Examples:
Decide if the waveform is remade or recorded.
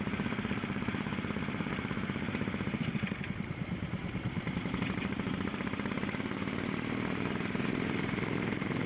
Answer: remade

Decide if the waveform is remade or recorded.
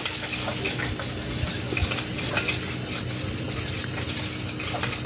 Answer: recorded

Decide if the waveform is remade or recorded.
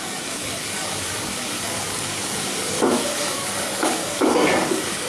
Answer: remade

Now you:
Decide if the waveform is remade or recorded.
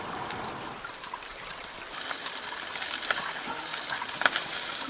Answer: recorded